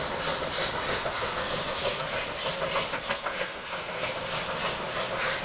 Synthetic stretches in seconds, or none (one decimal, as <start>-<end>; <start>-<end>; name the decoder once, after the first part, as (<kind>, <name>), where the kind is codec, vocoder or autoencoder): 0.9-2.0 (codec, SNAC); 2.9-4.1